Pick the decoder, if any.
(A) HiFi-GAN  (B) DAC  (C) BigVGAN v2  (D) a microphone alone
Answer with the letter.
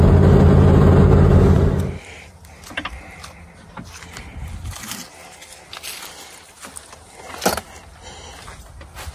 D